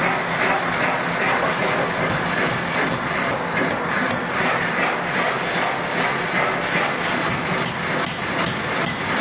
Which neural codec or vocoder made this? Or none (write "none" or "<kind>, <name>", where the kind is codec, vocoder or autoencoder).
none